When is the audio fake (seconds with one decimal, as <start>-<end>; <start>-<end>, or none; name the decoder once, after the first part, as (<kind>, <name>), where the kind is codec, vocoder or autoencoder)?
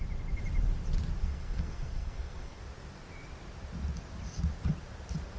1.2-2.6 (codec, SNAC)